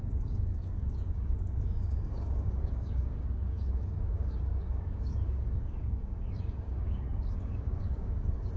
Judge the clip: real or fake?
fake